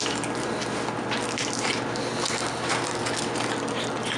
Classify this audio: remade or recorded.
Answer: recorded